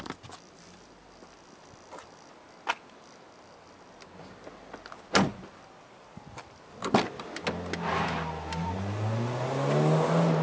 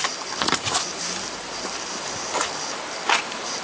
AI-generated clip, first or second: second